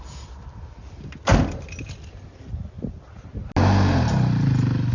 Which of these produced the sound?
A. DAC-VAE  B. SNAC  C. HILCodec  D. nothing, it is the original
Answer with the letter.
D